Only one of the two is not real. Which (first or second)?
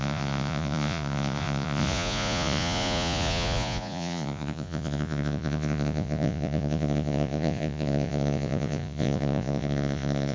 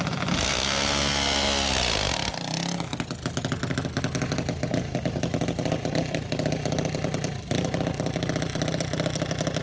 first